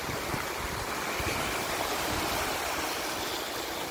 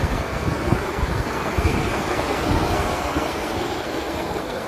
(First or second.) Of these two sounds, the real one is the first